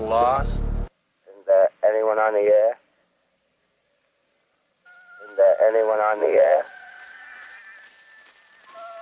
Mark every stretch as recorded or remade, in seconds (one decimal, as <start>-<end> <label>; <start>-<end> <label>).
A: 0.0-6.2 recorded; 6.2-7.6 remade; 7.6-9.0 recorded